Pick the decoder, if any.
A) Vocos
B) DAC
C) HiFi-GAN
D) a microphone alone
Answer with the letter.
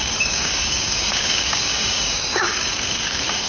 B